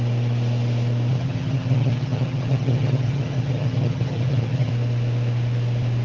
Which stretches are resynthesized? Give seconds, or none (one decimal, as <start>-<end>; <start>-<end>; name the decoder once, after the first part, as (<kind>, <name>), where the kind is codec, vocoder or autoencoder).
1.1-4.7 (vocoder, HiFi-GAN)